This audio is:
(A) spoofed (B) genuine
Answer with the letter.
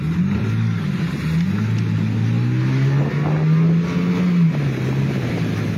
B